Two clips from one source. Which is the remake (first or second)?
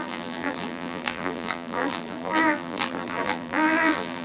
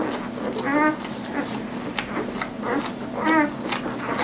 first